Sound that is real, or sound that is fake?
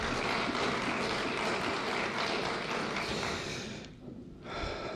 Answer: real